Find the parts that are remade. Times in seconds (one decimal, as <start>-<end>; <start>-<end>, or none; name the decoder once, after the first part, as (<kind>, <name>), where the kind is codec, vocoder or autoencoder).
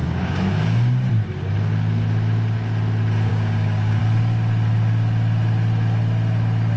0.0-1.1 (codec, DAC); 3.3-4.0